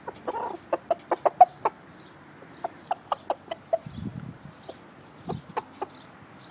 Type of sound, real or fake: real